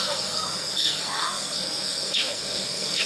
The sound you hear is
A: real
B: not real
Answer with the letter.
B